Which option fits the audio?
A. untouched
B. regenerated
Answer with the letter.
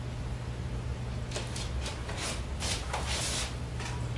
A